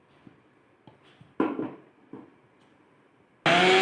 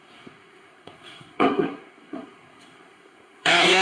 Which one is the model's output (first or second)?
second